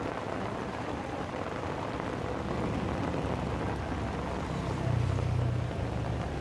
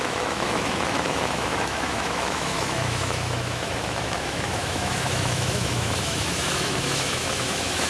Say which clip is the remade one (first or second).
second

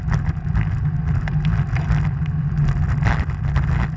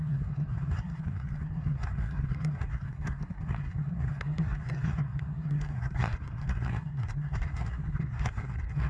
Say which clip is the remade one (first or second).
second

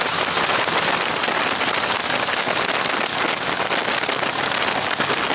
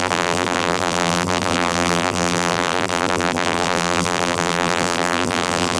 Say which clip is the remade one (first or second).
second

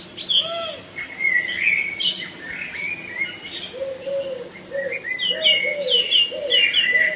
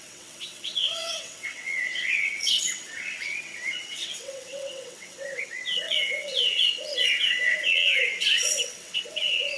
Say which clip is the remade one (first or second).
second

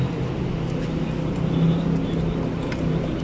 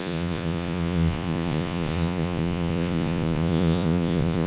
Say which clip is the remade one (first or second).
second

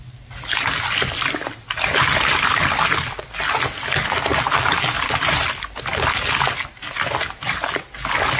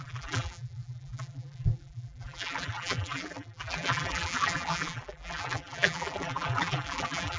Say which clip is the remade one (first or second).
second